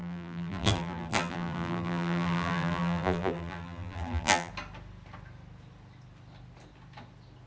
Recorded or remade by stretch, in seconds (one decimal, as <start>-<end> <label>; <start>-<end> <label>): 0.0-4.5 remade; 4.5-7.5 recorded